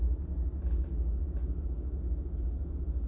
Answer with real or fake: real